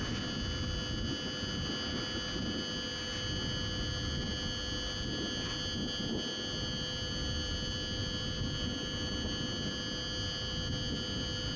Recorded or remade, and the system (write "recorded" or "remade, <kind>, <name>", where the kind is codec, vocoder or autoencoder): recorded